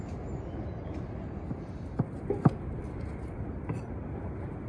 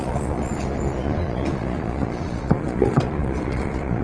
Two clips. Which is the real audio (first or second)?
first